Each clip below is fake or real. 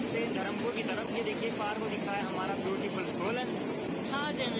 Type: real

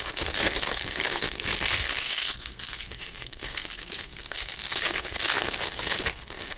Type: fake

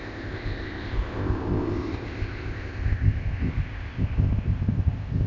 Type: fake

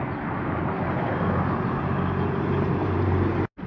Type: real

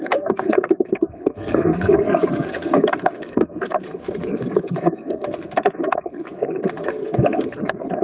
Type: fake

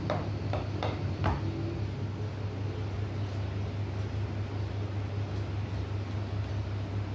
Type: real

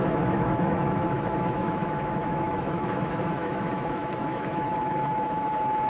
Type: fake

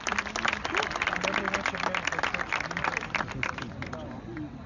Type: real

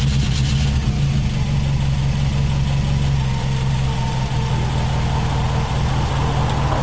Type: real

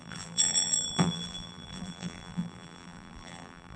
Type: fake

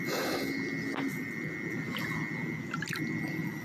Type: real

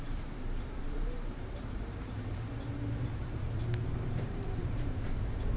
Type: fake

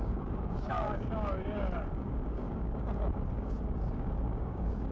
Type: fake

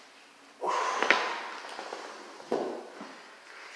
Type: real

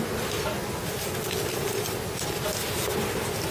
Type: real